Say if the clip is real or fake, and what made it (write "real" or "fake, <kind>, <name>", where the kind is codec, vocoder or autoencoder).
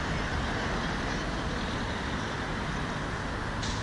real